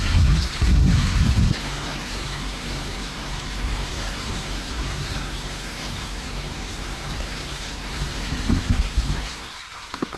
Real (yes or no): no